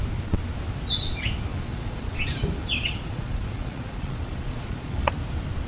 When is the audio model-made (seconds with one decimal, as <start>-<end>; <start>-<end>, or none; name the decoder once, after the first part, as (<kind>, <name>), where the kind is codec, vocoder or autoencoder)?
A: 1.5-2.1 (vocoder, Vocos); 2.6-5.1